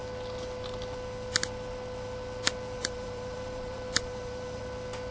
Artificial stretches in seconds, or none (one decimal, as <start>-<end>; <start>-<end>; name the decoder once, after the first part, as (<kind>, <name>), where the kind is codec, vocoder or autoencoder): 2.8-4.6 (vocoder, BigVGAN v2)